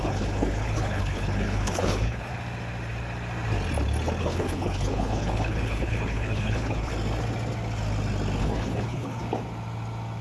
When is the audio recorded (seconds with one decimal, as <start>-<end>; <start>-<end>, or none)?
2.3-4.2; 6.9-8.4; 9.2-10.2